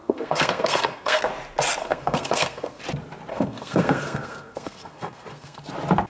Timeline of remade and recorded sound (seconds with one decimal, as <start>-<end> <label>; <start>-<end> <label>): 0.0-1.3 remade; 1.3-1.8 recorded; 1.8-2.8 remade; 2.8-3.3 recorded; 3.3-5.6 remade; 5.6-6.1 recorded